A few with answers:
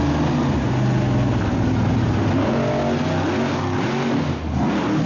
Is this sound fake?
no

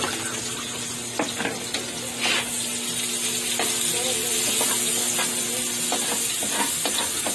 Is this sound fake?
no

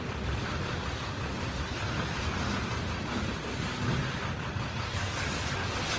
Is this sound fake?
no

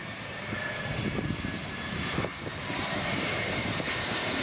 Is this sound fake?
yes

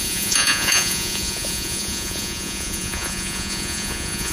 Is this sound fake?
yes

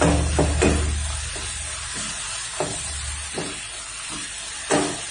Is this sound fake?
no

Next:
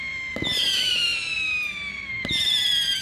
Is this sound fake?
no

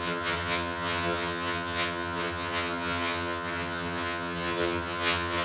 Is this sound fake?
yes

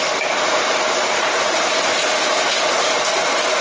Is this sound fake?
no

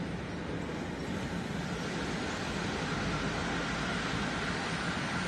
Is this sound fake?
no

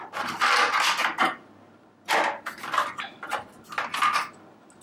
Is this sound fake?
no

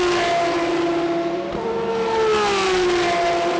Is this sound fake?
no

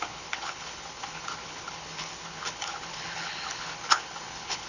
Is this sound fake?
yes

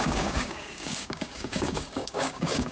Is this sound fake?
yes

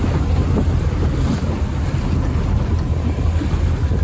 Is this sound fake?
no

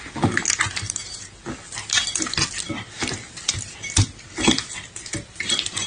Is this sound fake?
no